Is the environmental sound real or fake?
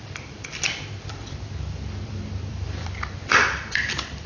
fake